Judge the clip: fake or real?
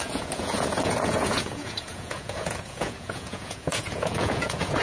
fake